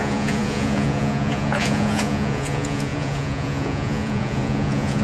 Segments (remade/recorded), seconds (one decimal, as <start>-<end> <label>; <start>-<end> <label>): 0.0-5.0 remade